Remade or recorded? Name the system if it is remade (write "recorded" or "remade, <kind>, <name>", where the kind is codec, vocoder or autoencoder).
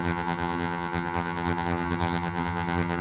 remade, vocoder, HiFi-GAN